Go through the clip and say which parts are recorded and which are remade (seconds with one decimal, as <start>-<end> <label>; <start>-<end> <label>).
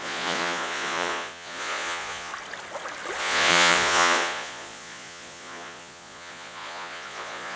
0.0-2.3 remade; 2.3-3.2 recorded; 3.2-7.6 remade